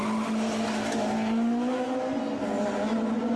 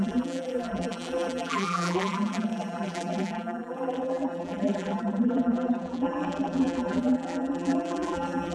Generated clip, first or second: second